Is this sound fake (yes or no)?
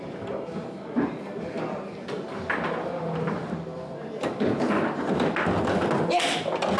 no